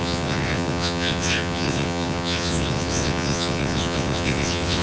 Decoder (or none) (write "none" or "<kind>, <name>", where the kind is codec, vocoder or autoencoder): vocoder, WaveNeXt